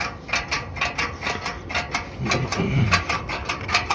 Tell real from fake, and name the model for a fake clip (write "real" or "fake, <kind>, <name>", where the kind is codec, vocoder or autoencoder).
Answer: fake, vocoder, BigVGAN v2